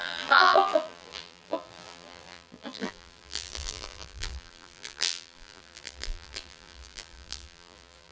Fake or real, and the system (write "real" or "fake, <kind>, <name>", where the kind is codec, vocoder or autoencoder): fake, vocoder, BigVGAN v2